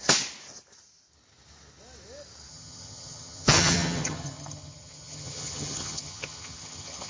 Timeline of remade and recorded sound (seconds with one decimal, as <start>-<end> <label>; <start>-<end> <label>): 0.0-2.5 recorded; 2.5-7.1 remade